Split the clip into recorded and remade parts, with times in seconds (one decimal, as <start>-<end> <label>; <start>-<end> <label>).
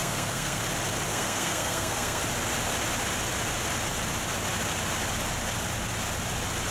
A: 0.0-0.6 remade; 0.6-1.1 recorded; 1.1-2.2 remade; 2.2-6.7 recorded